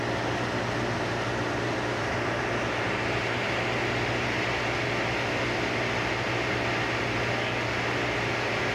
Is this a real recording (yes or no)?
yes